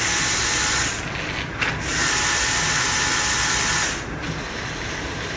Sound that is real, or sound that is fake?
real